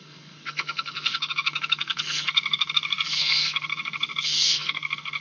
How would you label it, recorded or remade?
remade